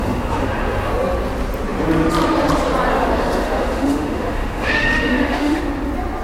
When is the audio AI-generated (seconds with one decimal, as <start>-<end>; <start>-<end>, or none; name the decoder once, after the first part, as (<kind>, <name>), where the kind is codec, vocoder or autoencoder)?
0.0-0.9 (autoencoder, DAC-VAE); 2.9-5.6